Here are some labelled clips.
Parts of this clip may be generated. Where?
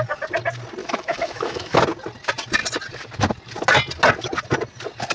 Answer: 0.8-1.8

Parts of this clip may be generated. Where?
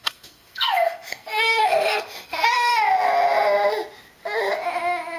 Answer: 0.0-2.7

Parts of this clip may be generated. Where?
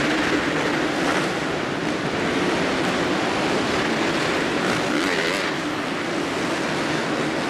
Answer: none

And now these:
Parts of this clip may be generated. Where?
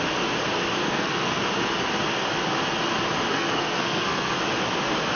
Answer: 0.8-1.4; 3.3-4.4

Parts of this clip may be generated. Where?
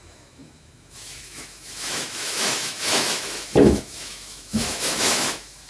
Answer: 0.0-5.7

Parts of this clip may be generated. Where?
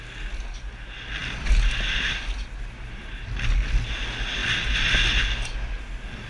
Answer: none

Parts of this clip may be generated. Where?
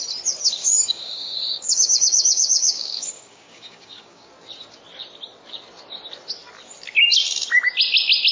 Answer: 0.6-4.3